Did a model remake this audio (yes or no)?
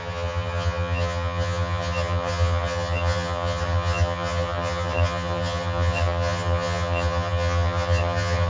yes